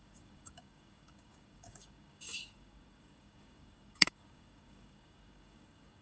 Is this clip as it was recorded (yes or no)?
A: no